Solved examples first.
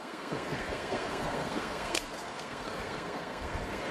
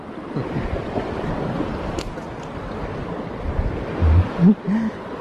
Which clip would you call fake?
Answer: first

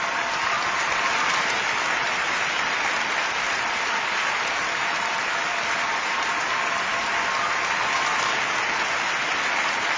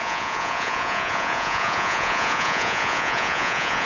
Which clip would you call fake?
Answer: second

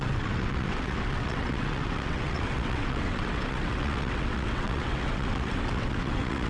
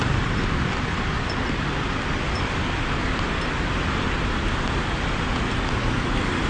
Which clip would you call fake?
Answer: first